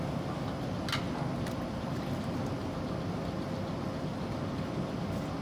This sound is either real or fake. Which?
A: real